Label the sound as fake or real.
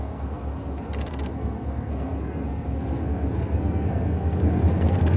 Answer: fake